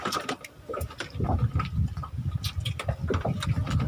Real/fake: real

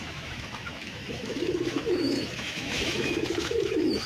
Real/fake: fake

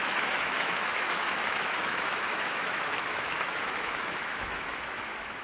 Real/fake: fake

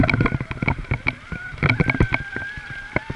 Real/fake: real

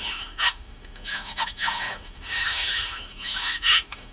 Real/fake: fake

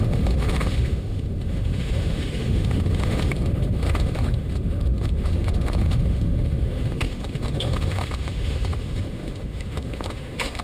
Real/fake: fake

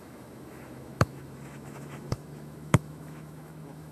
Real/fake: fake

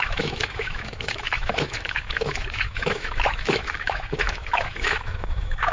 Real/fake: fake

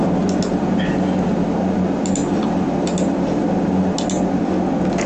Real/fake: real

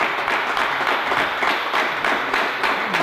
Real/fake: real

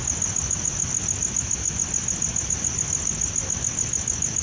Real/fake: real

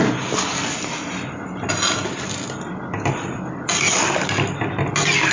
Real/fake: real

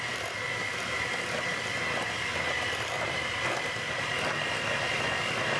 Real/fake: real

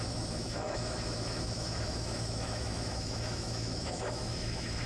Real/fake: fake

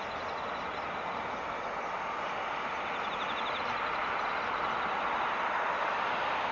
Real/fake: real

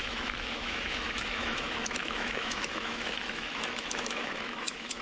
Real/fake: fake